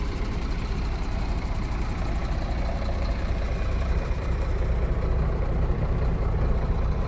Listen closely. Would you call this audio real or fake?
fake